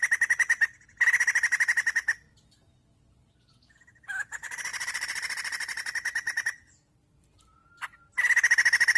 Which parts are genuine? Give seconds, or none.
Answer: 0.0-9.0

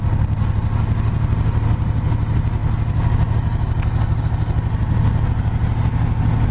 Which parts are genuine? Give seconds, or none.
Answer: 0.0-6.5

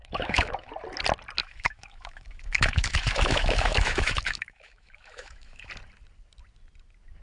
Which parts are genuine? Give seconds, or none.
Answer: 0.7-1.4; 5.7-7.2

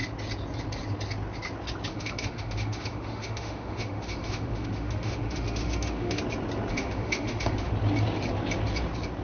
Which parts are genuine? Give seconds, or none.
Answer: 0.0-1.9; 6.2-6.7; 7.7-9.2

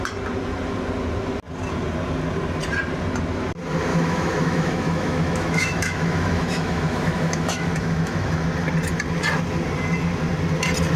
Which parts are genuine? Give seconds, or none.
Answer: 0.0-3.9; 8.4-11.0

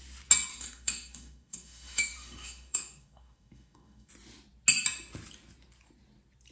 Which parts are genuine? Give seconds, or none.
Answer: 0.0-0.5; 4.1-6.5

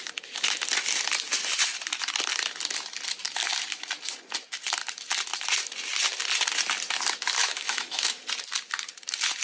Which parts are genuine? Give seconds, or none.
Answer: 0.0-7.4; 8.2-9.4

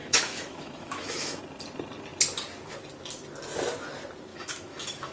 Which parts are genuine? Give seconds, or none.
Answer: 1.4-4.3